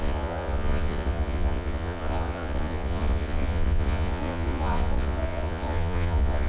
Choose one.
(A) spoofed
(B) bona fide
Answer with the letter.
A